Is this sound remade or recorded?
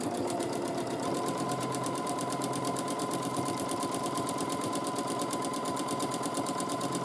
remade